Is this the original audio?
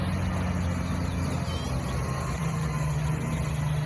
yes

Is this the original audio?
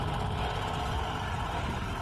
yes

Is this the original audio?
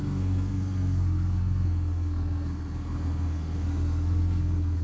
no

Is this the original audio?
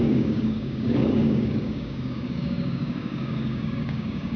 no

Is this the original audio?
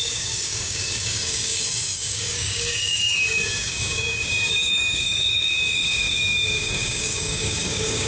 no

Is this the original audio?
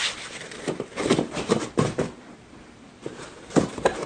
no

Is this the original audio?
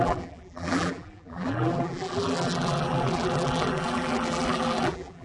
no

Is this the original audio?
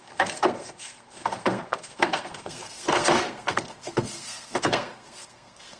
no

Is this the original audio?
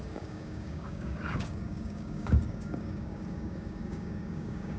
no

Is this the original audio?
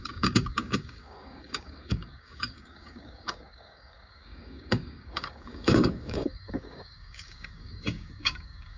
no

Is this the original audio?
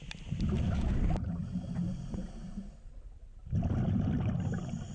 yes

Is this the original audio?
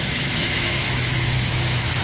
no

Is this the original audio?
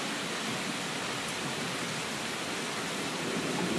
yes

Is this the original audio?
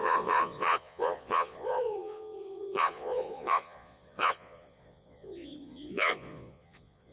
no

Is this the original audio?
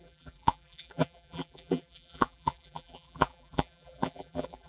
no